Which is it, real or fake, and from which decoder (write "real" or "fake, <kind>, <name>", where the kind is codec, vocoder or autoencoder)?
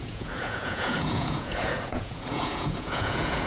fake, vocoder, Vocos